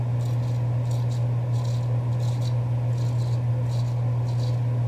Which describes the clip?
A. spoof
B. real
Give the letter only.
B